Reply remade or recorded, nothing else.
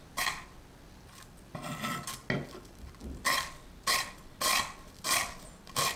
recorded